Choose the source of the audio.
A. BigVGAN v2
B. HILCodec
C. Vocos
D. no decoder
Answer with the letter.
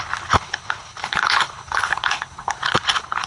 B